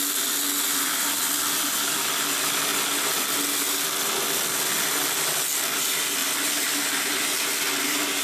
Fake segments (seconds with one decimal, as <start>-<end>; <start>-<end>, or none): 6.2-8.2